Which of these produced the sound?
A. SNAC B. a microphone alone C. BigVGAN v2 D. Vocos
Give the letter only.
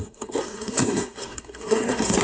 A